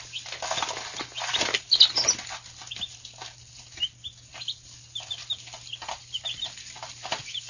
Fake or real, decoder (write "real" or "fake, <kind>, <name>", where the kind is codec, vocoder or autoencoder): real